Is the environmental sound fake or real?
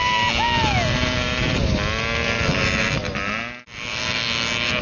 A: real